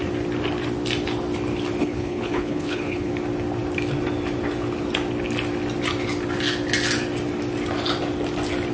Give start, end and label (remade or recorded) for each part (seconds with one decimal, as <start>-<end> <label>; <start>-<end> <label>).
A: 0.0-1.8 recorded; 1.8-3.1 remade; 3.1-8.7 recorded